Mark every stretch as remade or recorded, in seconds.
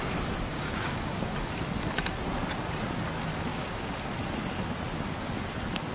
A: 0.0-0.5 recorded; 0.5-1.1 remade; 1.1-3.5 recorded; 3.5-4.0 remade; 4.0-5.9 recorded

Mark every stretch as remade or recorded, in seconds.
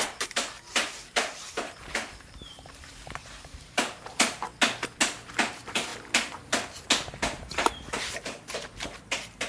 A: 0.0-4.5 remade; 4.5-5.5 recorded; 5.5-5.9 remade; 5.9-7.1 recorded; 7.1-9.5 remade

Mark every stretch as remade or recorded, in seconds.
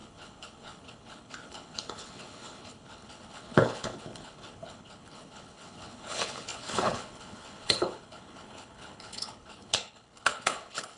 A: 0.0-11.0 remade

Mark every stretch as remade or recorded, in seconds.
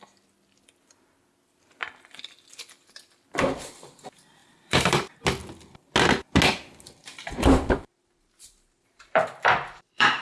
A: 0.0-4.4 recorded; 4.4-5.1 remade; 5.1-7.0 recorded; 7.0-10.2 remade